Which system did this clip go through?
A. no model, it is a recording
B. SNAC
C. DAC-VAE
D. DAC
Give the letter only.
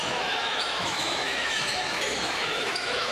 C